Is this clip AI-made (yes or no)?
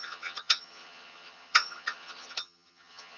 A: yes